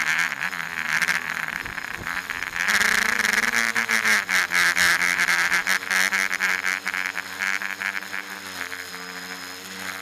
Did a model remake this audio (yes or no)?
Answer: no